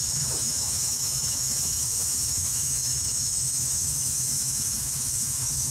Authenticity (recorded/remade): remade